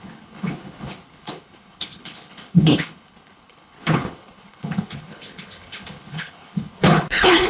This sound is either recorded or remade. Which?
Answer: remade